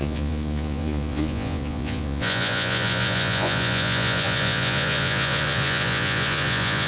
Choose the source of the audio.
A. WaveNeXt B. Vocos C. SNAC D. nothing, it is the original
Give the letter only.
B